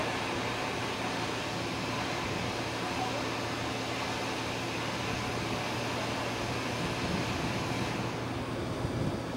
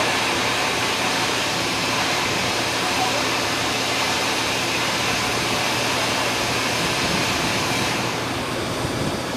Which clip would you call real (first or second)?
first